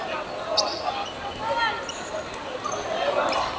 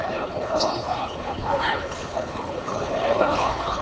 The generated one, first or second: second